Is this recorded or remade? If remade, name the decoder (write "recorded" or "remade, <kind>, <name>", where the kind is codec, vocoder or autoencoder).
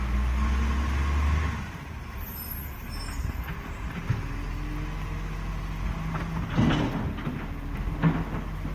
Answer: recorded